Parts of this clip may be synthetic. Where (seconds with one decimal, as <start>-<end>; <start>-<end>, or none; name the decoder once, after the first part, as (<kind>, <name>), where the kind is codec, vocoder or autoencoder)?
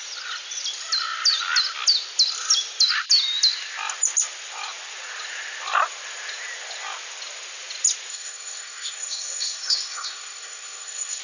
8.1-11.2 (codec, SNAC)